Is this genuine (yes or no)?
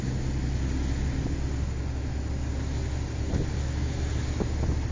yes